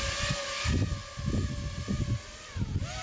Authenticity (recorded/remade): recorded